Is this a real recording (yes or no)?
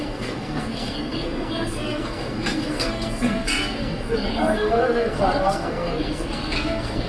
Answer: no